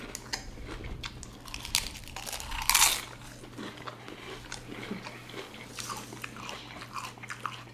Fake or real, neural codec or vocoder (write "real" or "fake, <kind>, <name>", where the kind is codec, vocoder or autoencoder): real